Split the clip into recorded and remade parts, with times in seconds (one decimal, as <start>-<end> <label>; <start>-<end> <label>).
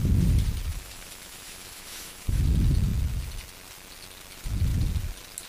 0.0-0.7 recorded; 0.7-2.4 remade; 2.4-5.5 recorded